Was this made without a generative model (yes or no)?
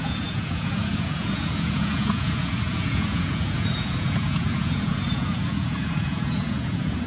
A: no